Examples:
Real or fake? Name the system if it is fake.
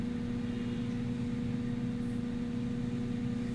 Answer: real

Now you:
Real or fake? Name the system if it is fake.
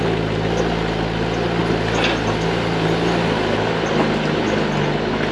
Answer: real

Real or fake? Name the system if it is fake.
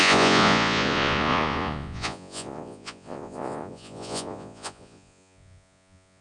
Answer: fake, vocoder, Vocos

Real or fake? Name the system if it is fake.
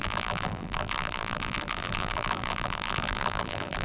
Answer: fake, vocoder, BigVGAN v2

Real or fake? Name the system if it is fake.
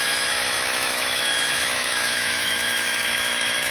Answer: fake, autoencoder, DAC-VAE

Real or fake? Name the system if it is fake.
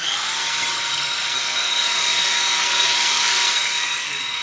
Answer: fake, codec, SNAC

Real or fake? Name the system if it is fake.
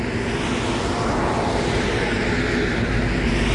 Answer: real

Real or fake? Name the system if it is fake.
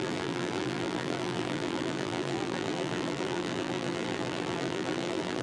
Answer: fake, vocoder, BigVGAN v2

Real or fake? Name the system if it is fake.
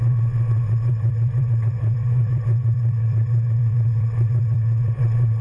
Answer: fake, vocoder, WaveNeXt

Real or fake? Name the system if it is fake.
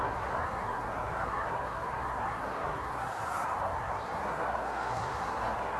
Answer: fake, codec, SNAC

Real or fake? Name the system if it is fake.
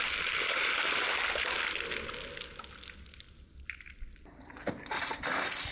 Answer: real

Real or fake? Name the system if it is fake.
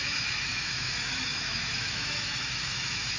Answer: fake, autoencoder, DAC-VAE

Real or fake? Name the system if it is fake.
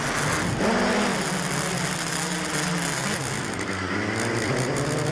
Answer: real